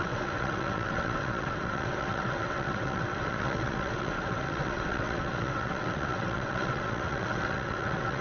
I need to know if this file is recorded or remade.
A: remade